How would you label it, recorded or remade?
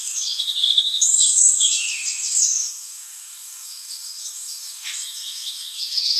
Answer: remade